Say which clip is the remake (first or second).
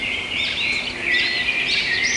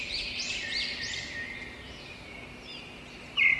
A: first